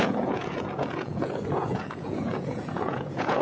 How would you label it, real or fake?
fake